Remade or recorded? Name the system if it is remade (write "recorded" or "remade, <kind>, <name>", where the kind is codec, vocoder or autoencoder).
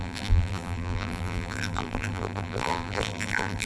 remade, vocoder, BigVGAN v2